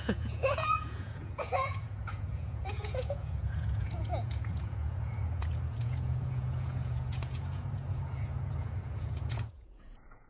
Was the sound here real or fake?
fake